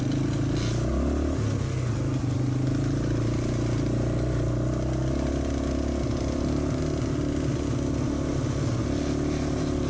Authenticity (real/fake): real